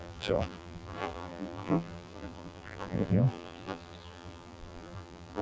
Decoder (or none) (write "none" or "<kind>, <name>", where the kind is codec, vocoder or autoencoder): vocoder, BigVGAN v2